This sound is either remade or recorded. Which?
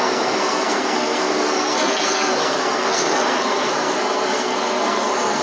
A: remade